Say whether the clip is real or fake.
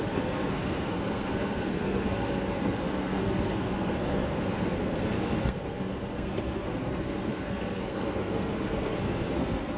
fake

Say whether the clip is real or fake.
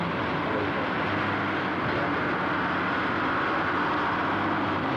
real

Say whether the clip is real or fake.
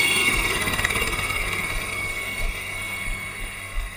fake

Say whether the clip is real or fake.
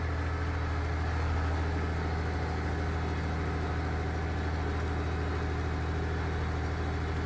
real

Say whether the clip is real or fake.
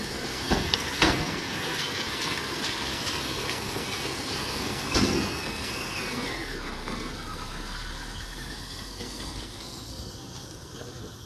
fake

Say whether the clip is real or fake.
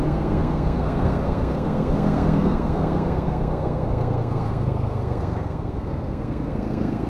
fake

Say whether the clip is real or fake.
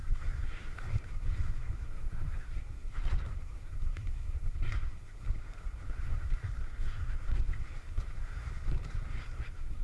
fake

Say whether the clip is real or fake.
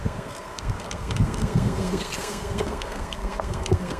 fake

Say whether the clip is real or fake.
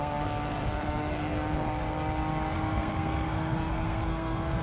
fake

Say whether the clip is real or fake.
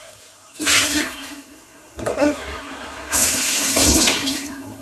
fake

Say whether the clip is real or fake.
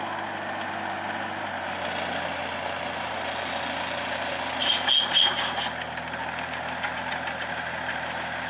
real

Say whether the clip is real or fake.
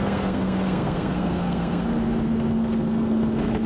fake